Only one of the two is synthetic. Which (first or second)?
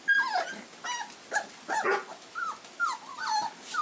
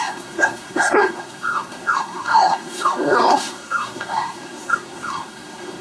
second